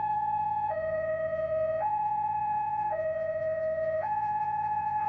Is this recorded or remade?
remade